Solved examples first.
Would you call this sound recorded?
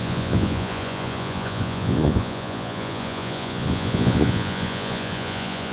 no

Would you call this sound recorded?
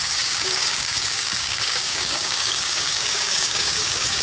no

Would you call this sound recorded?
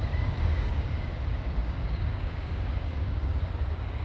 no